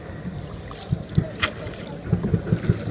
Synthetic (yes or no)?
no